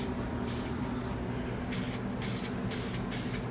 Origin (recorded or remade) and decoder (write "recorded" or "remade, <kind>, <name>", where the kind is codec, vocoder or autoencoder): recorded